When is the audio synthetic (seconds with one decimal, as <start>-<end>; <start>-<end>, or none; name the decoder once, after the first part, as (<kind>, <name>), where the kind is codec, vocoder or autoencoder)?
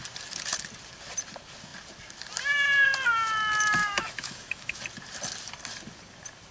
3.8-4.8 (autoencoder, DAC-VAE)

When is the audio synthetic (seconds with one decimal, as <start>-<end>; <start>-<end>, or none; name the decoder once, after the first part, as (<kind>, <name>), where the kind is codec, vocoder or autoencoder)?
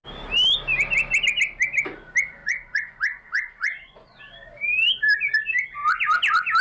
2.4-4.2 (vocoder, Vocos)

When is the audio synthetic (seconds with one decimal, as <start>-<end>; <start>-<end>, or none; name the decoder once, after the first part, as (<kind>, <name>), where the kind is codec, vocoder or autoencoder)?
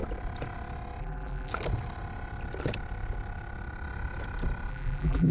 1.0-1.5 (vocoder, BigVGAN v2); 4.7-5.3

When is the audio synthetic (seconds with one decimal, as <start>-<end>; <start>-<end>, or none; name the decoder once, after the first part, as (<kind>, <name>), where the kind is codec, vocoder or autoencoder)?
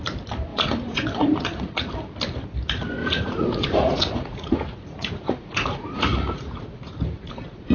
0.5-1.9 (vocoder, Vocos); 3.0-7.7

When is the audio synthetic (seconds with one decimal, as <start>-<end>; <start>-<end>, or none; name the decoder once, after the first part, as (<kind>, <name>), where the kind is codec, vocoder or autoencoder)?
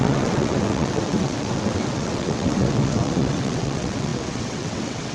0.0-5.1 (vocoder, WaveNeXt)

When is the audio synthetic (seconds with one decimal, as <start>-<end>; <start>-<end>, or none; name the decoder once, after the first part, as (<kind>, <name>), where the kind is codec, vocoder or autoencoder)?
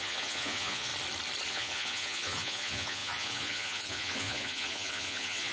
0.0-0.9 (vocoder, Vocos); 1.5-5.5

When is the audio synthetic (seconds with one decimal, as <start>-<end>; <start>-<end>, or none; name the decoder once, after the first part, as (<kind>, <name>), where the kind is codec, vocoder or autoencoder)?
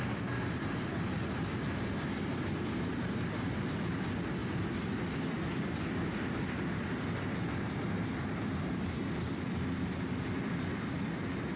none